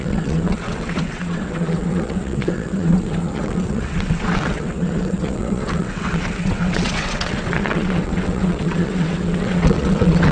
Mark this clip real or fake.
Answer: fake